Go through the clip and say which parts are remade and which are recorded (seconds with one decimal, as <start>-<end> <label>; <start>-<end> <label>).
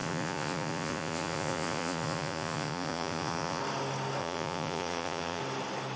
0.0-3.6 remade; 3.6-4.2 recorded; 4.2-5.4 remade; 5.4-6.0 recorded